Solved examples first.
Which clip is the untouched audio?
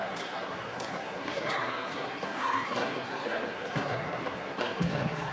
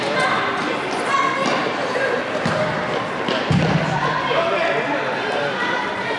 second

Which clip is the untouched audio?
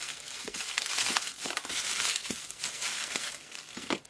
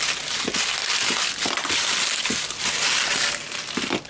second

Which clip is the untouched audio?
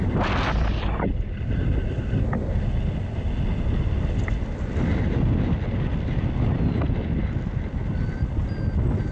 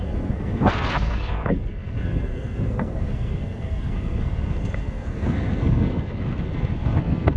first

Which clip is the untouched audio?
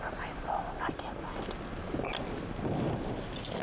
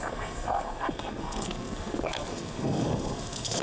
first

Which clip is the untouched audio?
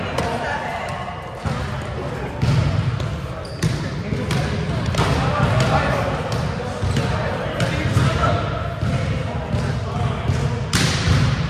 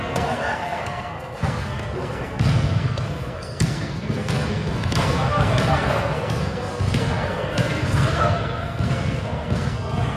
first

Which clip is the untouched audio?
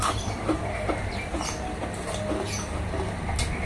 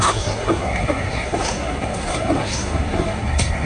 first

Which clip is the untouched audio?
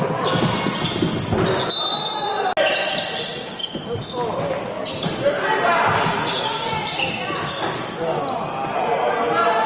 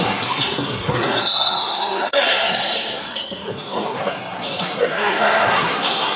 first